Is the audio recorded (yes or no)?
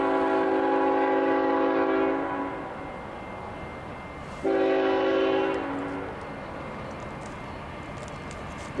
yes